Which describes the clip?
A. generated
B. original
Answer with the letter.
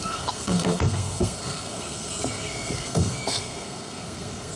A